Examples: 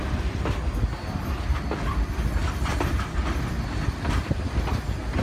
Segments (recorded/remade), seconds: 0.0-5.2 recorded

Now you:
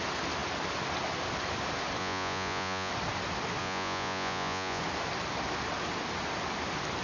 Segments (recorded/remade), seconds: 0.0-2.0 recorded; 2.0-2.9 remade; 2.9-3.6 recorded; 3.6-4.8 remade; 4.8-7.0 recorded

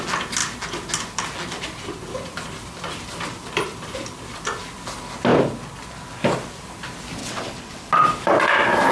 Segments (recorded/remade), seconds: 0.0-7.2 recorded; 7.2-7.9 remade; 7.9-8.9 recorded

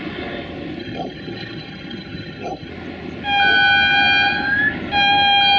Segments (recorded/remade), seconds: 0.0-0.8 recorded; 0.8-2.7 remade; 2.7-5.6 recorded